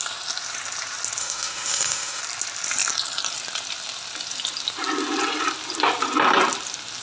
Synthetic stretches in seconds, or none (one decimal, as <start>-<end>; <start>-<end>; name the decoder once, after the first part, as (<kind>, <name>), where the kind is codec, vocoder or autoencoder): 1.2-2.2 (autoencoder, DAC-VAE)